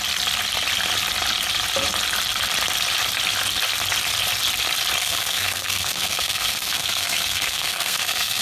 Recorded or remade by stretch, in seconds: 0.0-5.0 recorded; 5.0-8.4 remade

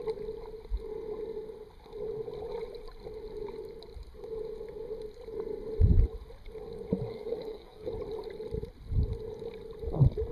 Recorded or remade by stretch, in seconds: 0.0-7.1 recorded; 7.1-7.9 remade; 7.9-10.3 recorded

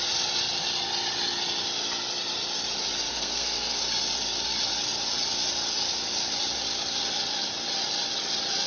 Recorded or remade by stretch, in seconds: 0.0-3.1 recorded; 3.1-3.8 remade; 3.8-8.7 recorded

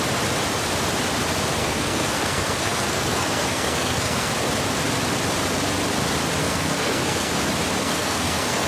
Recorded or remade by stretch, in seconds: 0.0-1.6 recorded; 1.6-4.3 remade; 4.3-6.4 recorded; 6.4-7.3 remade; 7.3-7.8 recorded; 7.8-8.7 remade

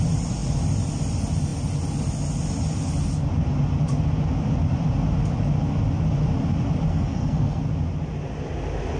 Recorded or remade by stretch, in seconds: 0.0-6.9 recorded; 6.9-7.6 remade; 7.6-9.0 recorded

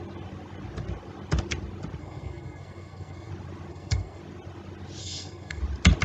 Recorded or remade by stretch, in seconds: 0.0-2.0 recorded; 2.0-3.3 remade; 3.3-3.7 recorded; 3.7-4.2 remade; 4.2-5.0 recorded; 5.0-5.6 remade; 5.6-6.0 recorded